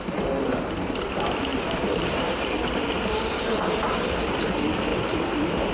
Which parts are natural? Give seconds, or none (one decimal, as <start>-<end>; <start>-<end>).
0.0-1.5; 2.5-4.9